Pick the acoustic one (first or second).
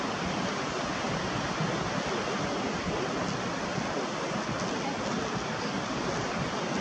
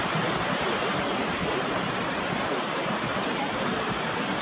first